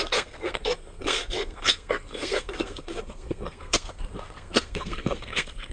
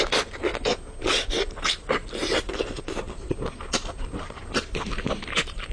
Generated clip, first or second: first